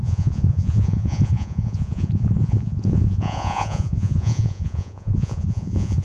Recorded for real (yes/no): no